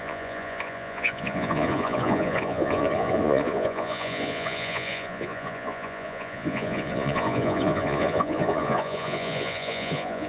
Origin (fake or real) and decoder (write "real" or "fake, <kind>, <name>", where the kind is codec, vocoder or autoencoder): fake, vocoder, Vocos